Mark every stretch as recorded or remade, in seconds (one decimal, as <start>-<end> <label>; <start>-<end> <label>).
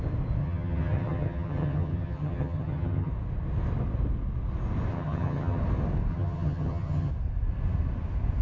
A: 0.0-0.4 recorded; 0.4-3.1 remade; 3.1-4.9 recorded; 4.9-5.6 remade; 5.6-6.1 recorded; 6.1-7.1 remade; 7.1-8.4 recorded